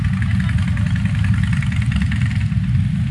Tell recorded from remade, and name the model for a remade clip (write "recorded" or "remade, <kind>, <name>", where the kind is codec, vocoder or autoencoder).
recorded